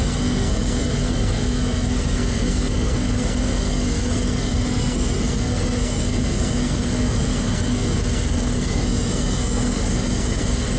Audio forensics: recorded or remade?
remade